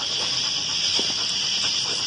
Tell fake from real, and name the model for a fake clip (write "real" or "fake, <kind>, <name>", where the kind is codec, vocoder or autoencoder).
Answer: real